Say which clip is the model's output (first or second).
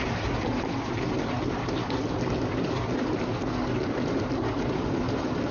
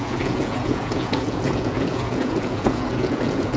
second